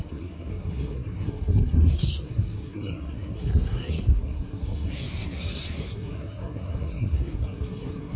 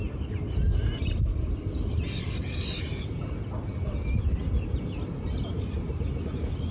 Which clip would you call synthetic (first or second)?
first